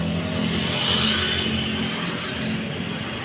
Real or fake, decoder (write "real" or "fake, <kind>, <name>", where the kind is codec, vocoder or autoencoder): real